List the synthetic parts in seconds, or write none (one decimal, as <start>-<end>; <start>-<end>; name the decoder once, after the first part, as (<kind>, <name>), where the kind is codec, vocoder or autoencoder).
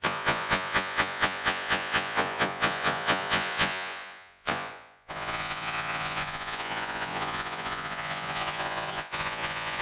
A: 0.0-9.8 (vocoder, Vocos)